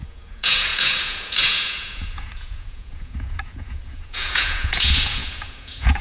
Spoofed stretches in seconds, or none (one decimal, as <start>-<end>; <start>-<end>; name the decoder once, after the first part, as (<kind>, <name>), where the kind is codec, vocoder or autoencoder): 0.0-6.0 (vocoder, Vocos)